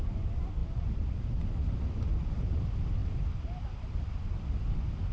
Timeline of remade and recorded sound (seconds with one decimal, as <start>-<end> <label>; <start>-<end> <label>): 0.0-5.1 recorded